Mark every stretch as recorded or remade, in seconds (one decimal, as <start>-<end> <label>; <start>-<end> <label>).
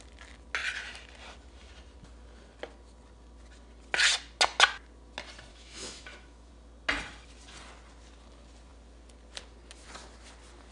0.0-5.5 recorded; 5.5-6.5 remade; 6.5-10.7 recorded